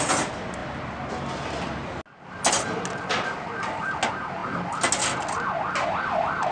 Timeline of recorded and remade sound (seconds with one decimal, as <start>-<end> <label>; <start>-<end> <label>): 0.0-6.5 recorded